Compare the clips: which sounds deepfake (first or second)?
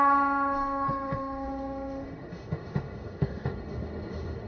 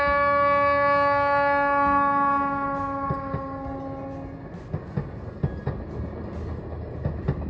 first